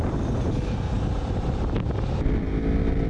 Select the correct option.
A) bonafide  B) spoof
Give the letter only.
A